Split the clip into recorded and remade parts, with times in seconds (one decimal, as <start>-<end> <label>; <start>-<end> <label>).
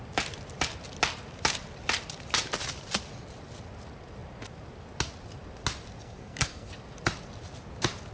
0.0-6.0 recorded; 6.0-6.7 remade; 6.7-8.1 recorded